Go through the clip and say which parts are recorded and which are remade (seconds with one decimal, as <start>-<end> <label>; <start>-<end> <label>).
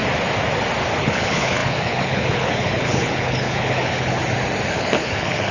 0.0-1.0 recorded; 1.0-4.2 remade; 4.2-4.7 recorded; 4.7-5.5 remade